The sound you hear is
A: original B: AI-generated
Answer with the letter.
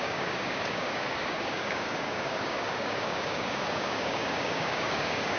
B